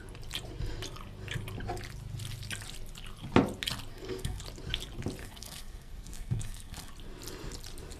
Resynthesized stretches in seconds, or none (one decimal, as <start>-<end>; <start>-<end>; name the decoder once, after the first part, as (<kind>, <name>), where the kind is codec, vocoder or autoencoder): 3.9-4.4 (codec, SNAC); 5.2-6.9